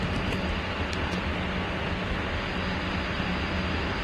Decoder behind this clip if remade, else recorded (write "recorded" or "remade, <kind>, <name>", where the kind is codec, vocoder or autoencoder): recorded